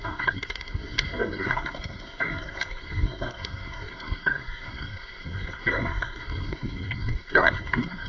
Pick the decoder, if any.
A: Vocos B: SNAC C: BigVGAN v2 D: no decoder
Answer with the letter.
B